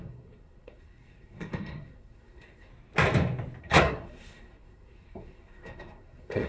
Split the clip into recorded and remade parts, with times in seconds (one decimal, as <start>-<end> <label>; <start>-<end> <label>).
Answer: 0.0-2.7 remade; 2.7-3.6 recorded; 3.6-6.5 remade

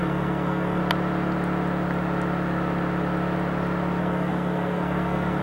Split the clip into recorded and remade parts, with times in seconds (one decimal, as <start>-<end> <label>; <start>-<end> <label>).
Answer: 0.0-0.8 remade; 0.8-4.0 recorded; 4.0-5.4 remade

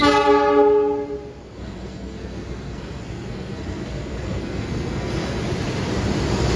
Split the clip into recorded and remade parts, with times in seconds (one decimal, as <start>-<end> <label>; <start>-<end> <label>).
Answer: 0.0-1.4 recorded; 1.4-5.4 remade; 5.4-6.6 recorded

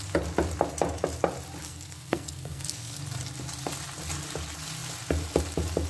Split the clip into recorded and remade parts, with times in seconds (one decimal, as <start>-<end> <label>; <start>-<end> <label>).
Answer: 0.0-1.6 recorded; 1.6-3.0 remade; 3.0-5.9 recorded